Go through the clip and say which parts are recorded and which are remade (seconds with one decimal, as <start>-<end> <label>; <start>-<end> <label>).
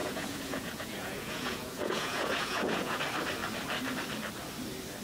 0.0-3.0 remade; 3.0-5.0 recorded